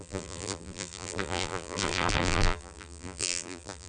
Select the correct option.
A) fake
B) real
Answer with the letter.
A